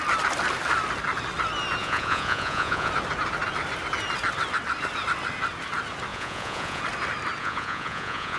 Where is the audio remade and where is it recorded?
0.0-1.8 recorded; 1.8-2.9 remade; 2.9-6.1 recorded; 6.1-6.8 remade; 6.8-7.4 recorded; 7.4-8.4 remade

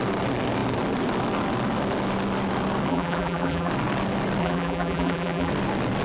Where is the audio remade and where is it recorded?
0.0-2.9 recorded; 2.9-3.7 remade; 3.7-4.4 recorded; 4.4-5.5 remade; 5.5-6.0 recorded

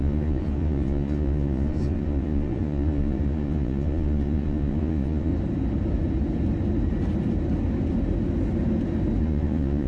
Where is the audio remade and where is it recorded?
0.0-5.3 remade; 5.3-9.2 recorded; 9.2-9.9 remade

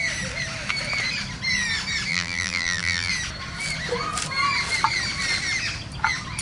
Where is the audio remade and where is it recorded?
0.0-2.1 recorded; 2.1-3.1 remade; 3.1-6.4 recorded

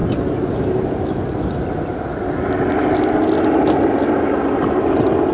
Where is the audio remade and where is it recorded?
0.0-5.3 recorded

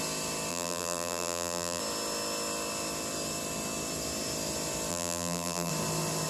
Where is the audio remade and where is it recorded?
0.0-0.5 recorded; 0.5-1.8 remade; 1.8-4.9 recorded; 4.9-5.7 remade; 5.7-6.3 recorded